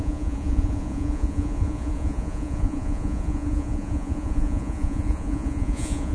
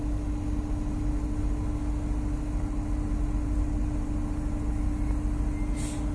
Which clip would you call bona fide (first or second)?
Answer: second